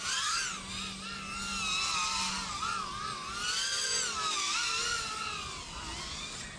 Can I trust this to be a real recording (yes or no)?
yes